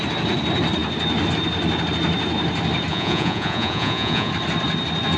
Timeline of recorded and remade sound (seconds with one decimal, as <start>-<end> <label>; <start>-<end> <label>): 0.0-2.9 recorded; 2.9-4.3 remade; 4.3-5.2 recorded